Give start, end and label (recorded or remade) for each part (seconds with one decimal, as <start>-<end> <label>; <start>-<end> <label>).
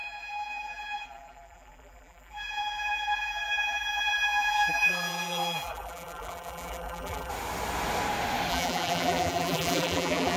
0.0-7.3 remade; 7.3-8.5 recorded; 8.5-10.4 remade